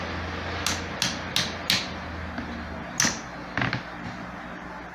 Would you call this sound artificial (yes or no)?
no